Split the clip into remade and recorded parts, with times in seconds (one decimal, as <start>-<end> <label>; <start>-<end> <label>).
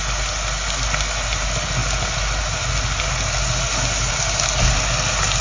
0.0-5.4 recorded